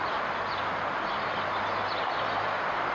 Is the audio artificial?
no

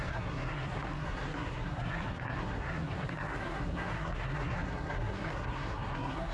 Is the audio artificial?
yes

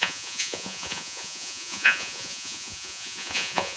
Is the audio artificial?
yes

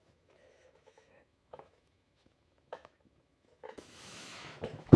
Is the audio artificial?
yes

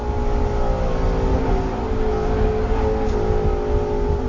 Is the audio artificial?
no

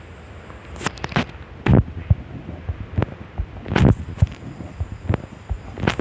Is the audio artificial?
no